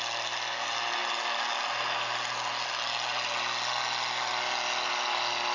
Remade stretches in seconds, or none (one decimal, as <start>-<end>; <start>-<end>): none